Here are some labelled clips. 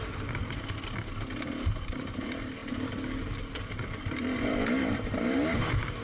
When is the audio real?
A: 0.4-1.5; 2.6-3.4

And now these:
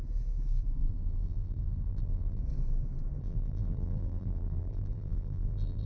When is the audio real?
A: 0.0-0.8; 2.4-3.2

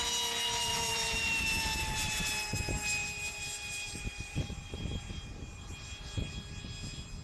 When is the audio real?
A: 0.0-0.6; 2.3-3.0; 6.0-7.2

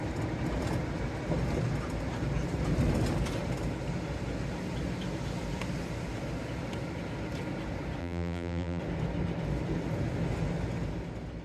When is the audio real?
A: 0.0-8.0; 8.8-11.4

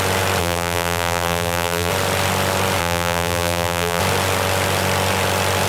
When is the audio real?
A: 0.0-0.4; 1.9-2.8; 4.0-5.7

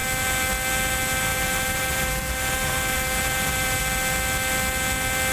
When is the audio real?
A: 0.0-1.3; 3.8-5.3